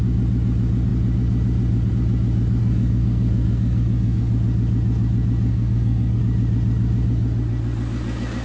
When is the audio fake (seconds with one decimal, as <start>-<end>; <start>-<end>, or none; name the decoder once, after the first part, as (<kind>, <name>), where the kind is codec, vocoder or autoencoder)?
2.6-4.3 (codec, SNAC); 5.5-6.2